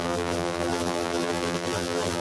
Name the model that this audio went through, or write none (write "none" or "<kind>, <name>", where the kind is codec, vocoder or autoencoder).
vocoder, BigVGAN v2